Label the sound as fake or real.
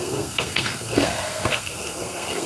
fake